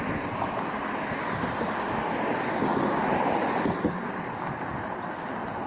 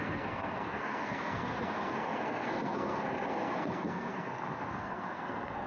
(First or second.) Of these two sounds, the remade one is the second